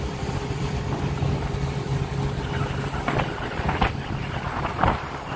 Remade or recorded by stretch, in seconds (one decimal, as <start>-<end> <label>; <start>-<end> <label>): 0.0-2.1 remade; 2.1-5.4 recorded